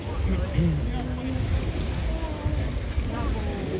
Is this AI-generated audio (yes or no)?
no